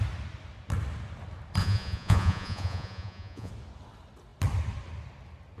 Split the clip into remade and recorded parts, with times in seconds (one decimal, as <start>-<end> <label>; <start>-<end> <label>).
0.0-1.6 recorded; 1.6-3.5 remade; 3.5-5.6 recorded